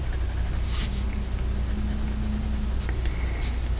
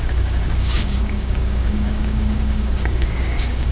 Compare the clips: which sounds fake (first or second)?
second